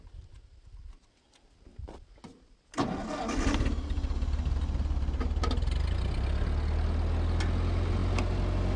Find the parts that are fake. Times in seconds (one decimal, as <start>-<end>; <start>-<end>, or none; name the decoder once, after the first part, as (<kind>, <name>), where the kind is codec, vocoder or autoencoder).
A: none